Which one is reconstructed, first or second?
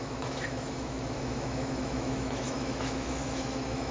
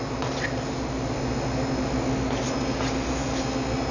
first